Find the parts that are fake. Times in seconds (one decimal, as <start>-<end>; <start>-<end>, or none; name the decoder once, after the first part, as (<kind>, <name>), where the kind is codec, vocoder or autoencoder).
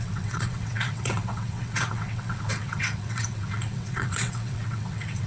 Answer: 0.0-5.3 (vocoder, WaveNeXt)